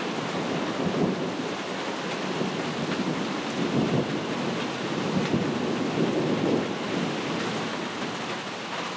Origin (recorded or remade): recorded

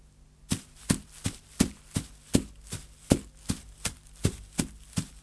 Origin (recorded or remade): recorded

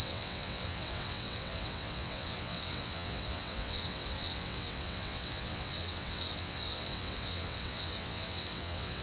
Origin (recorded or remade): remade